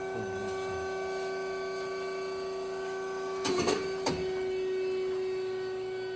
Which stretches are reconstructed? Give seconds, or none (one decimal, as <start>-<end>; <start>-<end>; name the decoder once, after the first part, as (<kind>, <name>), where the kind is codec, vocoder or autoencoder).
none